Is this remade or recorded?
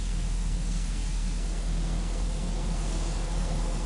remade